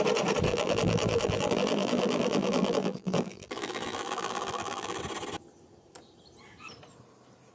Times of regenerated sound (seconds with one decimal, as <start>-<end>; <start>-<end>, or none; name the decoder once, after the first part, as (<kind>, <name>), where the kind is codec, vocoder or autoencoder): 0.5-5.0 (vocoder, BigVGAN v2)